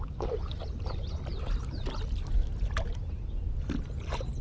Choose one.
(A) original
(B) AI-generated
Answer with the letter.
A